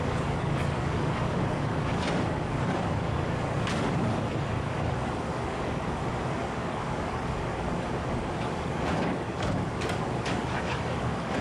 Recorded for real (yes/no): no